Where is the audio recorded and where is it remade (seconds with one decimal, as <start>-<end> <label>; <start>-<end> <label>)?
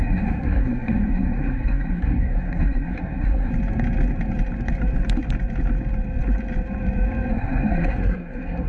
0.0-3.5 remade; 3.5-7.3 recorded; 7.3-8.7 remade